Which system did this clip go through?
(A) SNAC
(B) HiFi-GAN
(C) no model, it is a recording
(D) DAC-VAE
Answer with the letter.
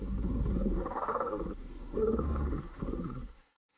A